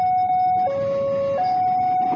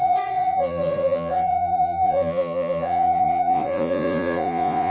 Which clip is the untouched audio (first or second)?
first